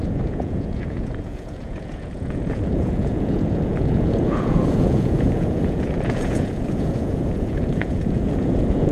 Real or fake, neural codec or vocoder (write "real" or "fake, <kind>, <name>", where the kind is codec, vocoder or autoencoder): fake, vocoder, Vocos